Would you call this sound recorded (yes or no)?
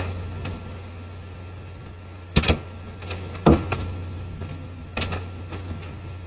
yes